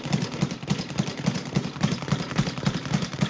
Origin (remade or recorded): remade